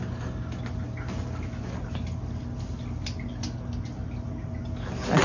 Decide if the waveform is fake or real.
real